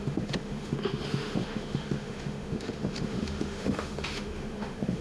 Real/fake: fake